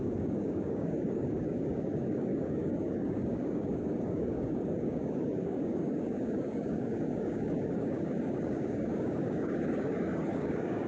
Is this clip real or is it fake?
fake